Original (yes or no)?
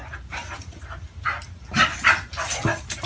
yes